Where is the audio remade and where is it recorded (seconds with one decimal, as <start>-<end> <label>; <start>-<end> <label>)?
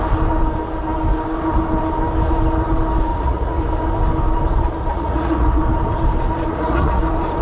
0.0-3.1 recorded; 3.1-3.6 remade; 3.6-4.9 recorded; 4.9-5.6 remade; 5.6-6.5 recorded; 6.5-7.0 remade; 7.0-7.4 recorded